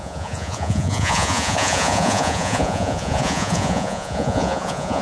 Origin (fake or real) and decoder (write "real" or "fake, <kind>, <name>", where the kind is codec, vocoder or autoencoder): fake, vocoder, Vocos